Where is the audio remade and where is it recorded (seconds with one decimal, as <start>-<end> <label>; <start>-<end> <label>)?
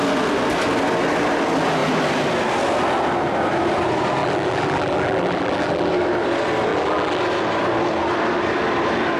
0.0-4.2 recorded; 4.2-5.9 remade; 5.9-6.7 recorded; 6.7-7.2 remade; 7.2-9.2 recorded